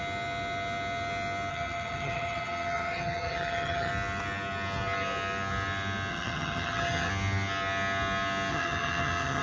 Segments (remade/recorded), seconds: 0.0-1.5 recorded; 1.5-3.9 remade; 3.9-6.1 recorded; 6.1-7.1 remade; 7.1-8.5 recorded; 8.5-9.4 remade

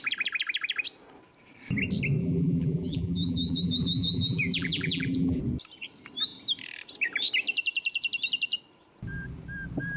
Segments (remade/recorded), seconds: 0.0-2.2 recorded; 2.2-5.4 remade; 5.4-10.0 recorded

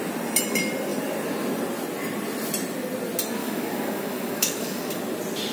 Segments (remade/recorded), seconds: 0.0-3.4 recorded; 3.4-4.9 remade; 4.9-5.5 recorded

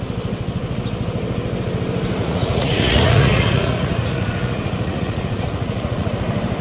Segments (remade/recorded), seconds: 0.0-2.2 recorded; 2.2-6.1 remade; 6.1-6.6 recorded

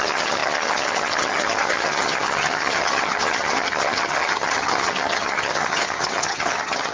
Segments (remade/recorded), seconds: 0.0-6.9 remade

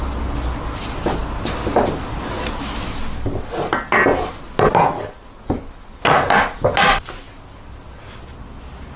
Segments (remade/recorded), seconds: 0.0-9.0 recorded

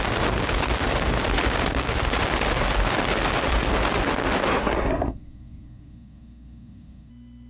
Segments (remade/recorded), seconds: 0.0-4.5 recorded; 4.5-7.1 remade; 7.1-7.5 recorded